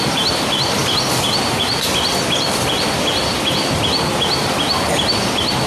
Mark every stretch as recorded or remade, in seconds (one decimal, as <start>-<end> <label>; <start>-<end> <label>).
0.0-5.7 recorded

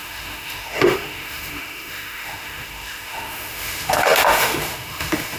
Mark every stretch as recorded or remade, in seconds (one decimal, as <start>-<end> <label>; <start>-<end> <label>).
0.0-5.4 remade

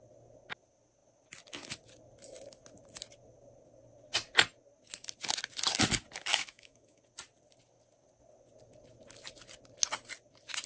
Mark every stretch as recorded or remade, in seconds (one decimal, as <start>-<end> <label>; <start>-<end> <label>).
0.0-6.3 recorded; 6.3-7.0 remade; 7.0-10.7 recorded

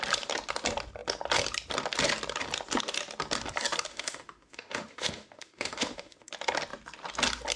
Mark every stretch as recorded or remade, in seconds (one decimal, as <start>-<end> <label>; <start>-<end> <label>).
0.0-3.9 recorded; 3.9-6.3 remade; 6.3-7.6 recorded

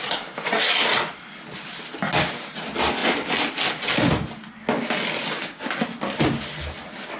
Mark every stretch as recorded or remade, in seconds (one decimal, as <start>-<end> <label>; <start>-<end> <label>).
0.0-5.2 recorded; 5.2-5.7 remade; 5.7-7.2 recorded